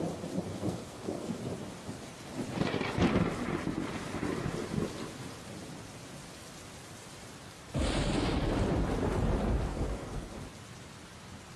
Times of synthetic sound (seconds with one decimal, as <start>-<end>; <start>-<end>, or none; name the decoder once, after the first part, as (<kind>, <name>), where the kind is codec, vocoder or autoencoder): 0.5-1.4 (codec, SNAC); 9.7-10.3